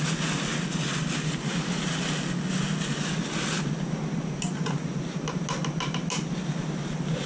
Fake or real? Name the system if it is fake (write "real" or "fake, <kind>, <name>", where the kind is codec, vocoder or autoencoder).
real